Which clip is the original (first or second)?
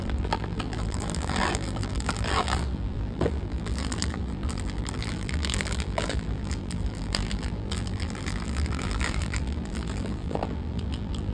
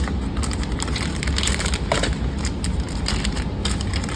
second